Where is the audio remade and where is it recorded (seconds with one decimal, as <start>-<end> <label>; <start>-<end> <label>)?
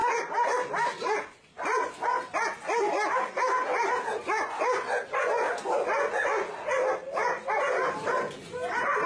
0.0-7.2 recorded; 7.2-8.7 remade; 8.7-9.1 recorded